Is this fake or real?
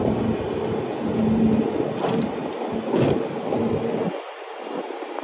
real